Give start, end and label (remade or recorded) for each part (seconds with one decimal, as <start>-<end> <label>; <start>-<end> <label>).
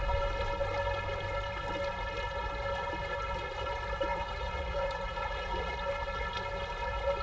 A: 0.0-4.1 recorded; 4.1-5.7 remade; 5.7-7.2 recorded